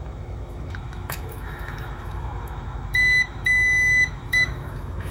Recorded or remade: remade